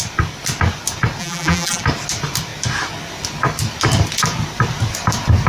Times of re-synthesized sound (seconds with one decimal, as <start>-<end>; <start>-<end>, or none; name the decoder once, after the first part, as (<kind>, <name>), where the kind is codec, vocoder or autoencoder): 1.2-1.8 (vocoder, BigVGAN v2)